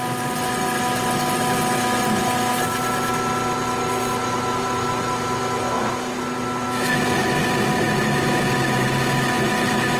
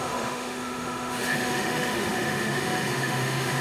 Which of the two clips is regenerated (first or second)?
second